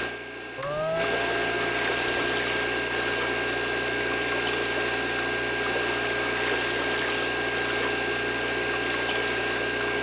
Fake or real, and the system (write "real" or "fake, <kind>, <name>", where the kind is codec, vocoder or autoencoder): real